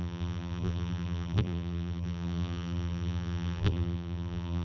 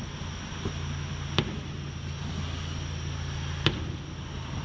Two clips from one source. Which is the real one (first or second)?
second